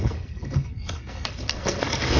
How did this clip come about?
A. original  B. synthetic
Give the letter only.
B